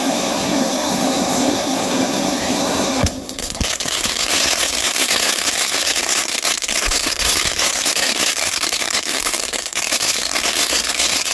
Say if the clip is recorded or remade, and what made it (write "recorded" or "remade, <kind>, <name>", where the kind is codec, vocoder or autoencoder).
remade, codec, SNAC